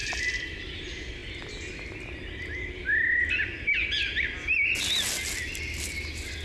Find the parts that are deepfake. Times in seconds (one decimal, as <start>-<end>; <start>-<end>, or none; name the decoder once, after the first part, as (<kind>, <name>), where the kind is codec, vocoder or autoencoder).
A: 0.0-0.6 (vocoder, BigVGAN v2)